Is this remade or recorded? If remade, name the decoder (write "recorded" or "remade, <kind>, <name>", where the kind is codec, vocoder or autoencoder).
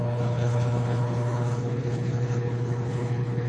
remade, codec, HILCodec